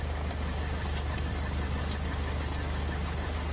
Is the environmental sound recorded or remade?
recorded